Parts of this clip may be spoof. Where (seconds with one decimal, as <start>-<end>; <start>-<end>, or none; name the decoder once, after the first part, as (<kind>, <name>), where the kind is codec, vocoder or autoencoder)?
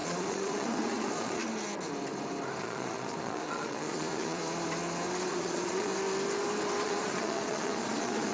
0.0-1.5 (vocoder, Vocos); 2.6-4.4; 5.3-5.9; 6.8-8.3